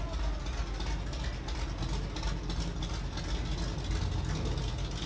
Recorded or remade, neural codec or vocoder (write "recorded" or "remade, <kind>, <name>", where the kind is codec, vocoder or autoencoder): recorded